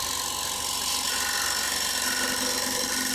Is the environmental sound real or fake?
real